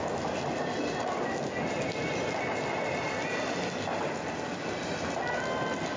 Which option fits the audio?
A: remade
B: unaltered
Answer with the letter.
B